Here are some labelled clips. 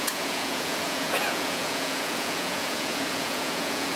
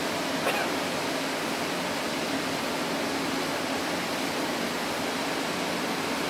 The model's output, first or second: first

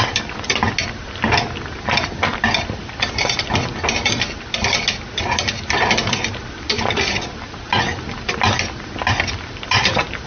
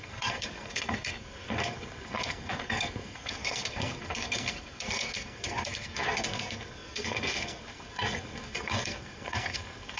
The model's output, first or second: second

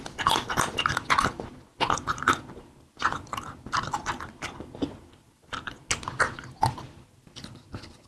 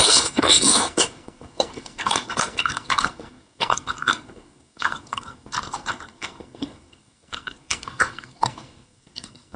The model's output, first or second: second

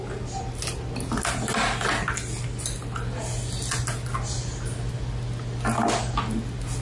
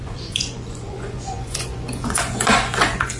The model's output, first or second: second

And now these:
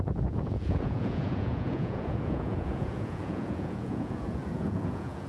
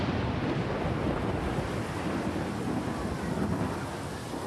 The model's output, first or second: first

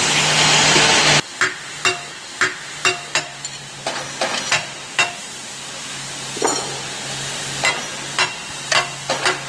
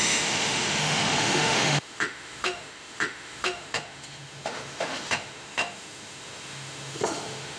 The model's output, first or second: second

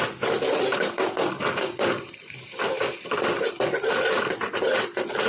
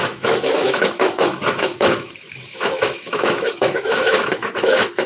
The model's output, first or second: second